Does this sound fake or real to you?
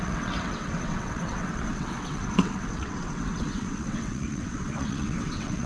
fake